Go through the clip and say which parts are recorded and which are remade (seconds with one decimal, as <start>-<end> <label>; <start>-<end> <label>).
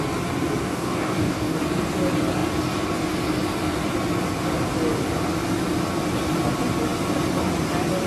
0.0-0.6 recorded; 0.6-1.6 remade; 1.6-8.1 recorded